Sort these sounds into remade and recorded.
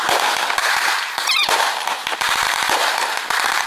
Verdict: remade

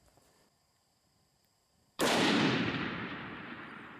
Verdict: remade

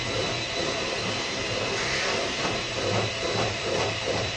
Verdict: remade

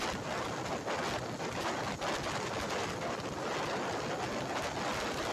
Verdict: recorded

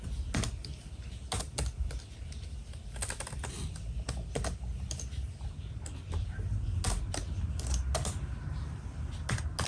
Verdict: recorded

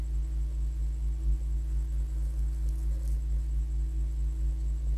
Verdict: recorded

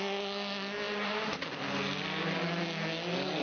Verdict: recorded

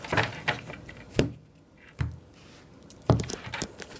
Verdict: remade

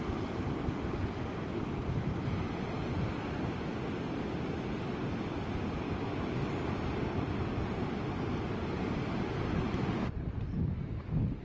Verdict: recorded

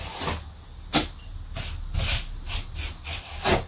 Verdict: recorded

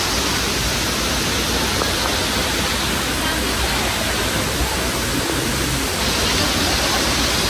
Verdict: recorded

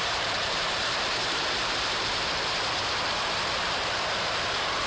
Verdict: remade